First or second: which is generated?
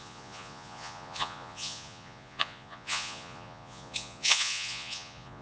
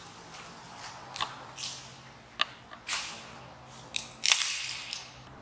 first